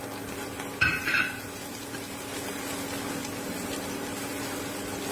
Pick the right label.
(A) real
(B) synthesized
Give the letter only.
A